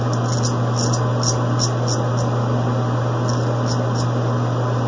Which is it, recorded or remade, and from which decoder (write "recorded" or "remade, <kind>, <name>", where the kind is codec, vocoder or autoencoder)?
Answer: recorded